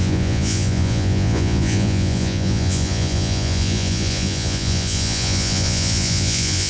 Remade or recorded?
remade